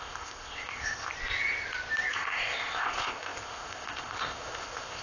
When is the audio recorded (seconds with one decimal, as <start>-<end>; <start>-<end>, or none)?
1.1-2.1